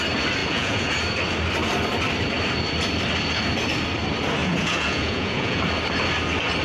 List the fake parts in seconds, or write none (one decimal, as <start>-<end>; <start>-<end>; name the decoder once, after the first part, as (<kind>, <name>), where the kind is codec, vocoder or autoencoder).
0.4-0.9 (vocoder, Vocos); 4.4-5.6